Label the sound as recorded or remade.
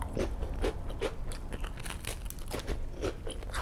recorded